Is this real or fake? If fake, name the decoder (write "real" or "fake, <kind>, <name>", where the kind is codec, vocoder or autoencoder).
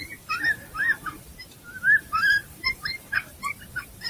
fake, vocoder, BigVGAN v2